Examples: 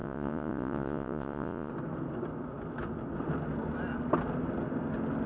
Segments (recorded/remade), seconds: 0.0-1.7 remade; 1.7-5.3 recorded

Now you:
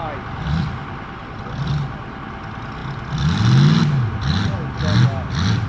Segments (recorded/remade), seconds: 0.0-5.7 recorded